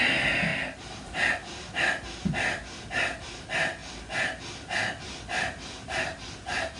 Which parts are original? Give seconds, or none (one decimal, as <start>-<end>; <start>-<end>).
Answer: 0.0-6.8

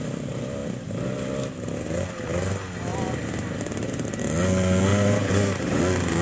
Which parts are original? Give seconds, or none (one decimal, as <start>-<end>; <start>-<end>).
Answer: 0.0-2.9; 4.2-4.9; 5.8-6.2

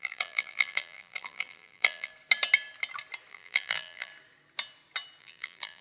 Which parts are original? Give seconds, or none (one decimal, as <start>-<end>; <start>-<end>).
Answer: 2.1-3.3; 4.1-5.2

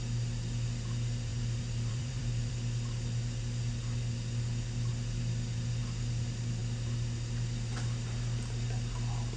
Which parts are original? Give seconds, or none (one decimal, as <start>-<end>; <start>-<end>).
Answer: 0.0-1.3; 2.5-9.4

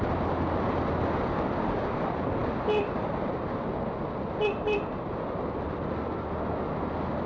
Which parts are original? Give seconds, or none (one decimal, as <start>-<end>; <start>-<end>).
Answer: 0.0-7.3